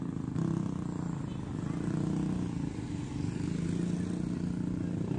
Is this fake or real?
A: real